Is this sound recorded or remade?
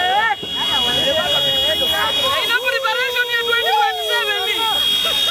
recorded